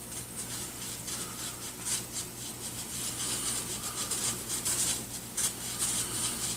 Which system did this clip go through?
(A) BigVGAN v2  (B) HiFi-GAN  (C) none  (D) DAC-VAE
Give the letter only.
A